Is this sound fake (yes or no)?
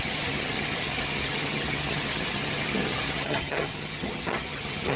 yes